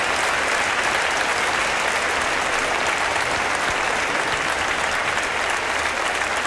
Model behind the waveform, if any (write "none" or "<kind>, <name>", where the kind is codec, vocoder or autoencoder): none